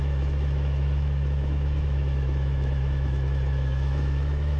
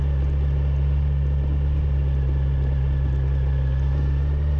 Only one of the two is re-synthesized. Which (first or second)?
first